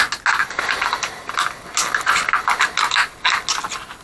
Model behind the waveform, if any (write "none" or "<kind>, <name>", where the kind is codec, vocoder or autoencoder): none